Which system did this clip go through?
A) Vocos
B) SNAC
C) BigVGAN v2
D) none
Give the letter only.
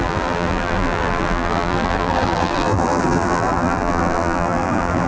C